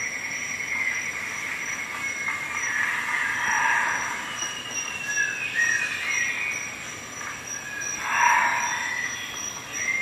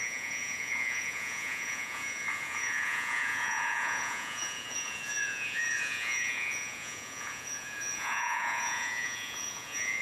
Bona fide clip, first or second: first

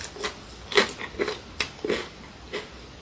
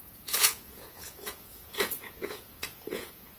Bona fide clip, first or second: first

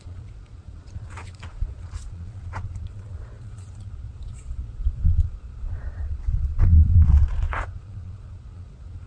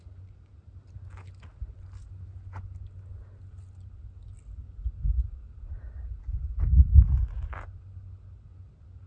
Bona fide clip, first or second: second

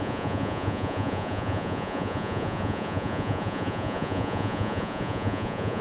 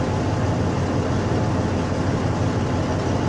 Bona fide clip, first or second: second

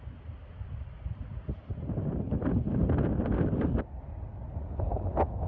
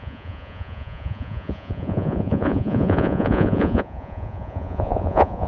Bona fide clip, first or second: first